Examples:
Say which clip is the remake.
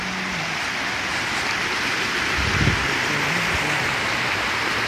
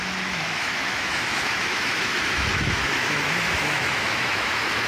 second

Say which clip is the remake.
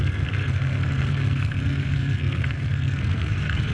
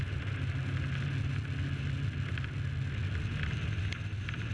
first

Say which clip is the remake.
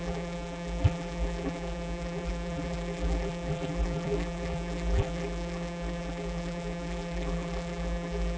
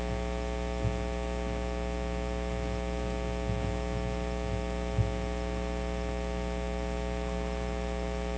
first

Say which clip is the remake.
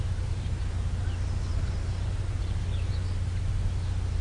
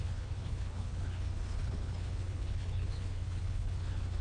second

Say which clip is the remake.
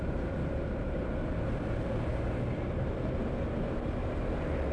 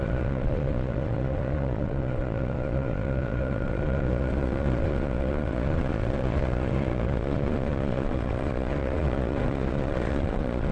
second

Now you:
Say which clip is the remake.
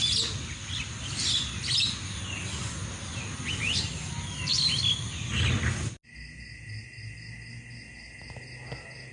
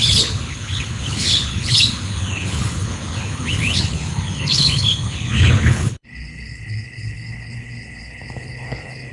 second